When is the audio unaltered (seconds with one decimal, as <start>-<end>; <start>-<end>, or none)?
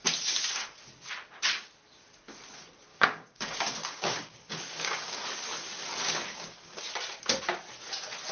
0.0-2.9; 5.2-5.9; 6.8-8.3